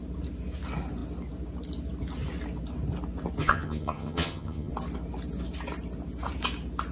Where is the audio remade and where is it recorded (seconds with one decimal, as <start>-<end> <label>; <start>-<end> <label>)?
0.0-3.4 recorded; 3.4-4.7 remade; 4.7-6.9 recorded